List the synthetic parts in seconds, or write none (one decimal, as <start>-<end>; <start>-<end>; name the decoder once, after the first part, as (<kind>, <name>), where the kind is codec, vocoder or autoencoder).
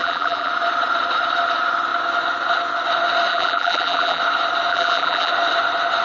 0.0-0.5 (vocoder, BigVGAN v2); 3.3-4.2; 4.7-5.3